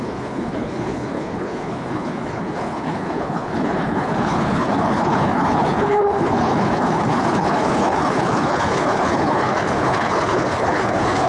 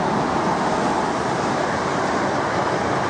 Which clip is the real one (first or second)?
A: second